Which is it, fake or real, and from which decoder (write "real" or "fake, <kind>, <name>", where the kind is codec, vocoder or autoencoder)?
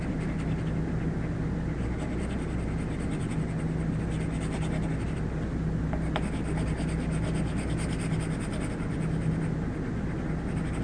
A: real